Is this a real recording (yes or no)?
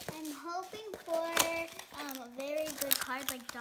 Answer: yes